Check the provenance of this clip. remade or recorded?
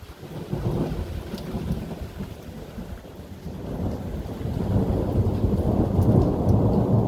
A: recorded